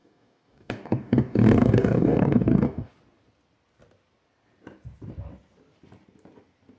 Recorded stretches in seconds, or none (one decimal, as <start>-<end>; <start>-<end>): 2.9-6.8